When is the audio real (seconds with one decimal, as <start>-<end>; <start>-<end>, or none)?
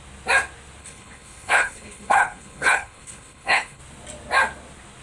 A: 0.0-0.8; 3.8-5.0